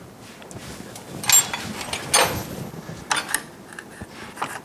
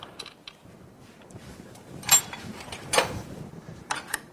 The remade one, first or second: second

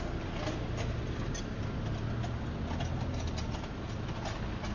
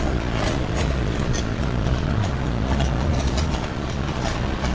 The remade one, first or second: second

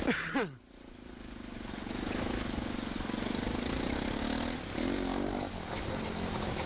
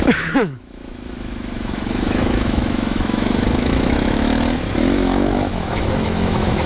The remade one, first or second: second